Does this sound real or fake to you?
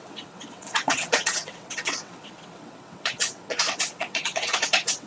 fake